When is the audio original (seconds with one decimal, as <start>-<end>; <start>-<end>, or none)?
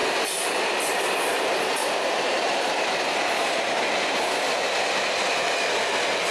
0.6-1.8; 3.8-6.3